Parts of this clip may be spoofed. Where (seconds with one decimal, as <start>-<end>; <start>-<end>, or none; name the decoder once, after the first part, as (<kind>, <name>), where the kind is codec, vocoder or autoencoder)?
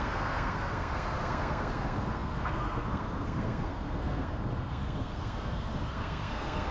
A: 0.0-6.7 (codec, SNAC)